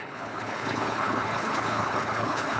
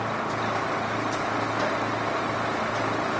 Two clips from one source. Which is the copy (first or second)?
first